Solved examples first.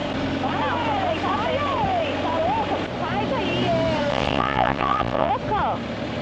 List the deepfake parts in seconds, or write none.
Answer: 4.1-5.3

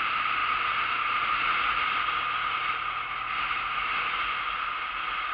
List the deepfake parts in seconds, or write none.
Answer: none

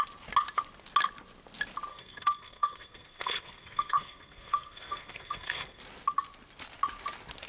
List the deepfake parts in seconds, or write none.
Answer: 1.9-5.8

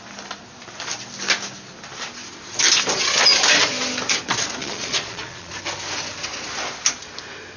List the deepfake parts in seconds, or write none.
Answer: 4.6-5.5

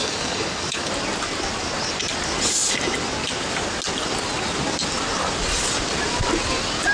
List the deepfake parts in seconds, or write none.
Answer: 0.0-0.9